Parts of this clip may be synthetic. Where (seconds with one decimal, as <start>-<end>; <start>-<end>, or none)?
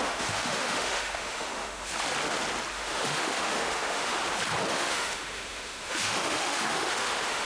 0.0-1.9; 2.7-4.2; 4.7-7.4